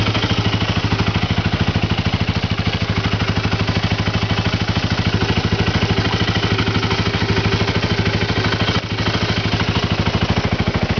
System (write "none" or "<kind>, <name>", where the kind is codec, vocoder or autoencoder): none